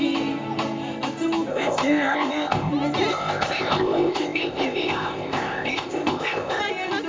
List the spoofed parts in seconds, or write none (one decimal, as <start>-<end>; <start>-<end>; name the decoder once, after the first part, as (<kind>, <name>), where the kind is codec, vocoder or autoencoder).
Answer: 1.5-2.7 (codec, ZipCodec); 3.1-6.6